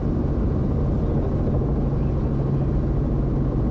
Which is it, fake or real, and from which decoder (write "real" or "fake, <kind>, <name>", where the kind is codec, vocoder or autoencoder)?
real